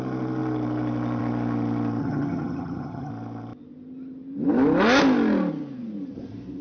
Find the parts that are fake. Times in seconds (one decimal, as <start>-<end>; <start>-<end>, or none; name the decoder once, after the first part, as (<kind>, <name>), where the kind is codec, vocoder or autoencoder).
2.0-3.1 (vocoder, HiFi-GAN)